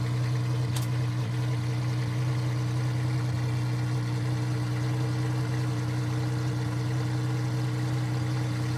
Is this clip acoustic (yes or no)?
yes